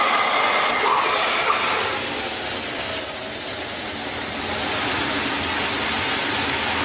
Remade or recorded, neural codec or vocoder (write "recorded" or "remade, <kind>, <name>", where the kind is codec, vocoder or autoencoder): recorded